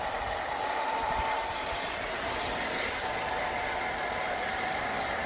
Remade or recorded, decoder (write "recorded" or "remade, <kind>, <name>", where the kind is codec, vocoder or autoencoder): recorded